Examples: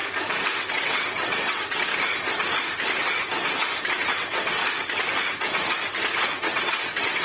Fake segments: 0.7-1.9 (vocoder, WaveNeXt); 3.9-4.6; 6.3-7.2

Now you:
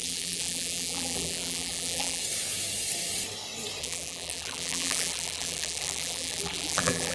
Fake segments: 0.0-2.2 (vocoder, BigVGAN v2); 3.8-7.1

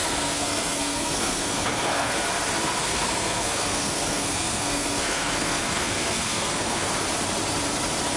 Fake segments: 0.0-2.1 (codec, SNAC); 2.8-6.9

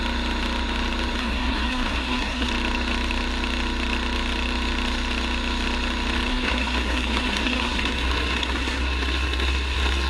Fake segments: 1.2-2.5 (codec, SNAC); 6.3-10.1

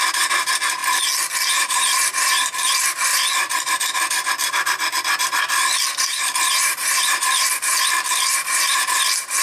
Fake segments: 0.0-0.8 (vocoder, BigVGAN v2); 1.5-3.1; 6.0-9.4

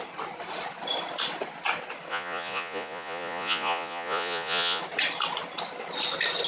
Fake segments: 2.1-4.8 (vocoder, Vocos)

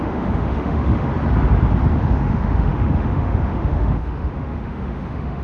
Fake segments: 0.0-1.1 (autoencoder, DAC-VAE); 1.9-5.4

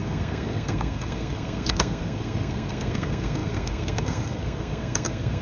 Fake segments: 0.0-5.4 (codec, SNAC)